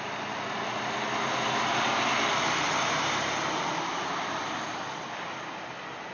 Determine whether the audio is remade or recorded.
recorded